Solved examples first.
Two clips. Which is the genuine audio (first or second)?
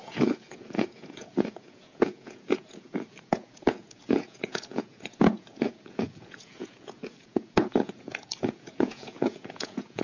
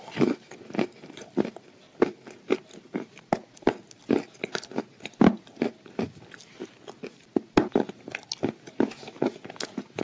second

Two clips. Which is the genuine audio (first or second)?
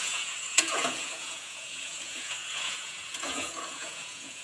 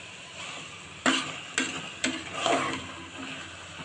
second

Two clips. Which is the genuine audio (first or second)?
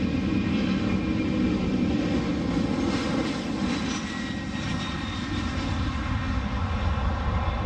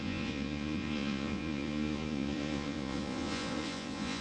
first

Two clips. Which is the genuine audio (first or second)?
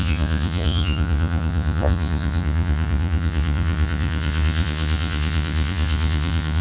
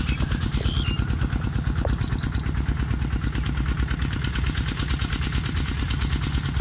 second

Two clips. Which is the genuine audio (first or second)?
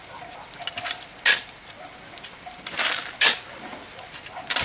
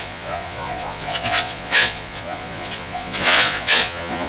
first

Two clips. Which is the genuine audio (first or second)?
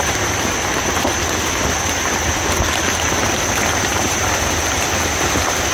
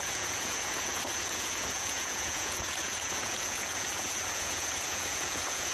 first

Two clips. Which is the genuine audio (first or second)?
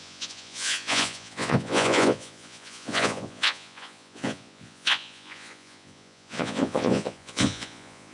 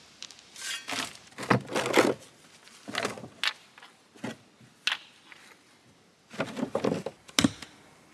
second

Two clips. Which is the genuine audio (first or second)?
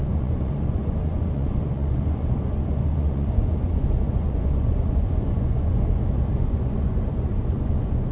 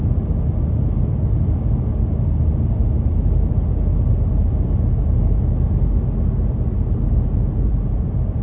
second